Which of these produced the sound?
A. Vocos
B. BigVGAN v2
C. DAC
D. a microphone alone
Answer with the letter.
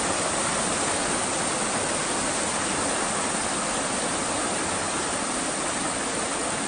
D